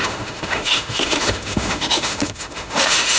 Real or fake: fake